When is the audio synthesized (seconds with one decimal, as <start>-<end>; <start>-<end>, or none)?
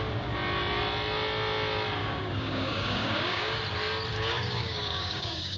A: 2.0-3.6; 4.1-5.6